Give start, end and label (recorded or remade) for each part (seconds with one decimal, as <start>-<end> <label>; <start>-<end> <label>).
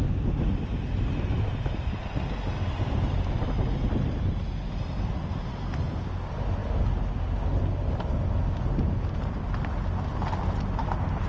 0.0-11.3 recorded